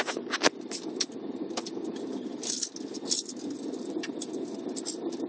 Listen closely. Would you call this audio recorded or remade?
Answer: recorded